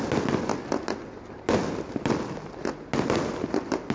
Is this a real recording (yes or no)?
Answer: yes